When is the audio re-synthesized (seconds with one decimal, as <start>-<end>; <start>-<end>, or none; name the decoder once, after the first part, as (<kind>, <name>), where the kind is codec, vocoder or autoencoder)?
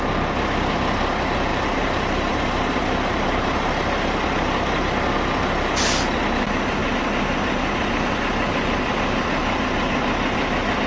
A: 1.5-3.7 (vocoder, BigVGAN v2)